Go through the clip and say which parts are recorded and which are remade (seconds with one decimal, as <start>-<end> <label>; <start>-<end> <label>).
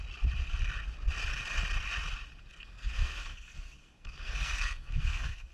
0.0-2.5 recorded; 2.5-5.5 remade